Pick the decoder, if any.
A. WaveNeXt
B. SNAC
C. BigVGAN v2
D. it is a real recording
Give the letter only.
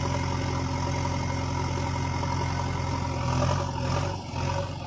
D